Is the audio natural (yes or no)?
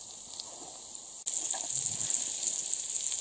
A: yes